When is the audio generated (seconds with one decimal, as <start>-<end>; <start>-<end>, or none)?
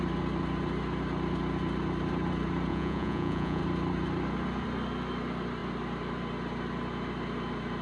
2.7-3.6